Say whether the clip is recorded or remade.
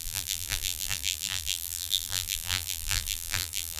remade